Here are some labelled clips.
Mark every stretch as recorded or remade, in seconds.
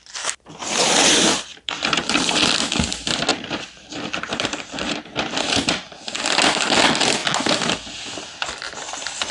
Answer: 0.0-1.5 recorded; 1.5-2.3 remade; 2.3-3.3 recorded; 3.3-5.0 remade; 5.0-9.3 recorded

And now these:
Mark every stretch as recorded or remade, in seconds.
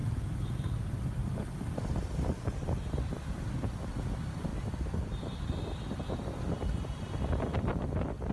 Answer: 0.0-1.2 remade; 1.2-2.4 recorded; 2.4-8.3 remade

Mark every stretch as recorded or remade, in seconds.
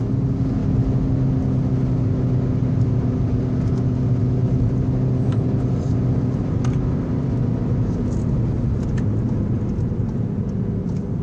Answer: 0.0-11.2 recorded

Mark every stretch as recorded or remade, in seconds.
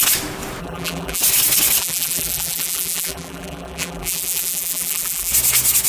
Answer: 0.0-0.6 recorded; 0.6-1.2 remade; 1.2-1.8 recorded; 1.8-5.3 remade; 5.3-5.9 recorded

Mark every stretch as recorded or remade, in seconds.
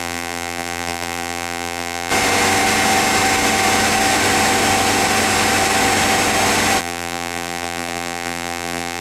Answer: 0.0-2.1 remade; 2.1-6.8 recorded; 6.8-9.0 remade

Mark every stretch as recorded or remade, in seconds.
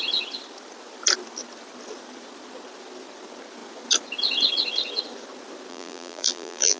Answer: 0.0-5.7 recorded; 5.7-6.8 remade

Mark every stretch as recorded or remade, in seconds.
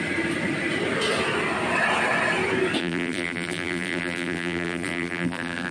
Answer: 0.0-2.8 recorded; 2.8-5.7 remade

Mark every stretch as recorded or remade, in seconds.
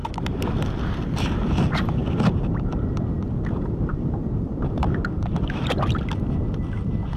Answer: 0.0-1.2 remade; 1.2-2.0 recorded; 2.0-3.1 remade; 3.1-3.9 recorded; 3.9-6.1 remade; 6.1-7.2 recorded